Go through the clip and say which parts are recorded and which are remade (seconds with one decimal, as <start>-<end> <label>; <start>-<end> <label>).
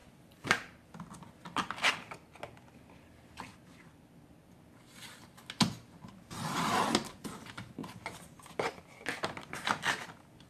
0.0-0.9 remade; 0.9-10.5 recorded